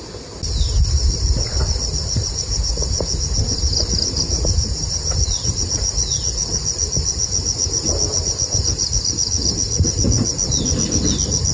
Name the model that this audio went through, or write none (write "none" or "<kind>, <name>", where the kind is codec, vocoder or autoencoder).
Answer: none